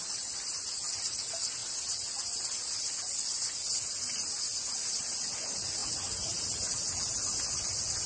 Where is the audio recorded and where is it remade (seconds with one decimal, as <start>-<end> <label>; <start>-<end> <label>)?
0.0-8.1 recorded